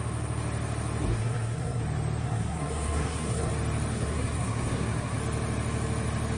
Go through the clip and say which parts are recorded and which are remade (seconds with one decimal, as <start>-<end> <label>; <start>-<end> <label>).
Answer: 0.0-1.1 recorded; 1.1-1.8 remade; 1.8-2.2 recorded; 2.2-3.5 remade; 3.5-3.9 recorded; 3.9-5.2 remade; 5.2-6.4 recorded